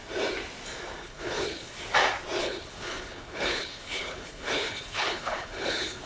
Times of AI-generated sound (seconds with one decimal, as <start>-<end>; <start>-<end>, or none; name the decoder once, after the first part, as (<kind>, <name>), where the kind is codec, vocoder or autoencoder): 1.0-1.8 (codec, HILCodec); 2.4-6.1